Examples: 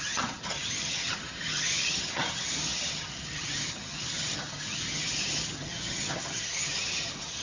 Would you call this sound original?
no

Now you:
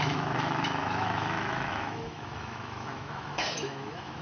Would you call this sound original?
no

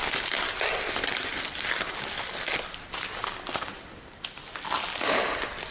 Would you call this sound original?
yes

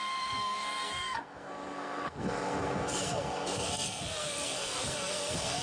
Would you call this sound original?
no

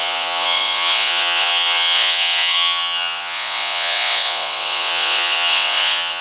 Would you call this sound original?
no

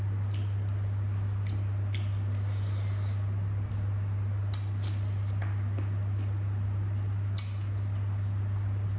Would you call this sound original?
yes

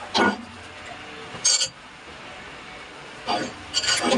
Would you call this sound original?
yes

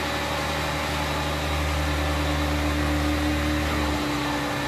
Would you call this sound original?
yes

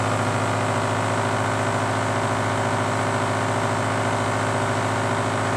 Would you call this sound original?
yes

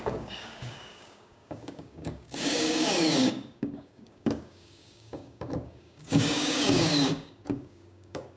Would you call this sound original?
no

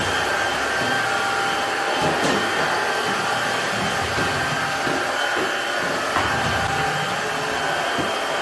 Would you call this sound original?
yes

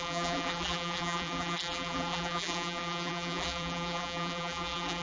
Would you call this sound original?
no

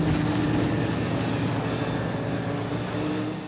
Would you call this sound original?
yes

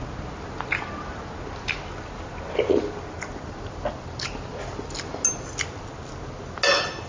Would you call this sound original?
yes